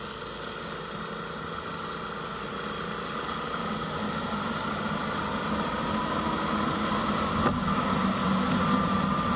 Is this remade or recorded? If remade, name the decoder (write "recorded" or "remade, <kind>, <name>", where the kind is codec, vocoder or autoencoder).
recorded